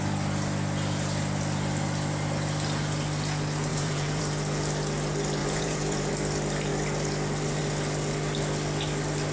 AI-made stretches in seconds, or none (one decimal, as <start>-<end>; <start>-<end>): 3.7-4.2; 5.4-6.1